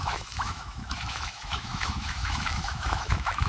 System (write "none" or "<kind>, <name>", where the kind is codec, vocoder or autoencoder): autoencoder, DAC-VAE